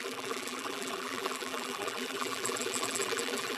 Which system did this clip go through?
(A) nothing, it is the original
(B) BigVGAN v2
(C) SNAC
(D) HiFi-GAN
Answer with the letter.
B